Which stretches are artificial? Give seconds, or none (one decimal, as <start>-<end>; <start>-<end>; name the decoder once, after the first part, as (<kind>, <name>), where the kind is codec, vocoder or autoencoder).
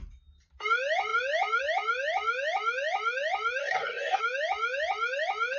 3.6-4.2 (codec, SNAC)